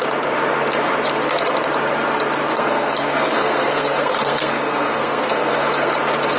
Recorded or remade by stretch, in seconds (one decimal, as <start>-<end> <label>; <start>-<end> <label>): 0.0-2.5 recorded; 2.5-5.9 remade; 5.9-6.4 recorded